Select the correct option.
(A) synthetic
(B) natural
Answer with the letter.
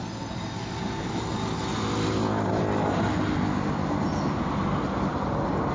B